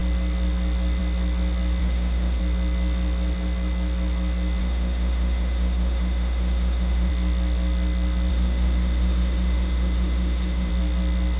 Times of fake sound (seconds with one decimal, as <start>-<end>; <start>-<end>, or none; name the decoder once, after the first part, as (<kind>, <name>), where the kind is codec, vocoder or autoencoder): 1.8-2.4 (autoencoder, DAC-VAE); 4.6-7.1; 8.3-10.7